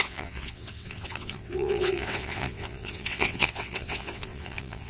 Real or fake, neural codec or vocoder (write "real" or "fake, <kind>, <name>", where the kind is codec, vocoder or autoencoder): fake, vocoder, WaveNeXt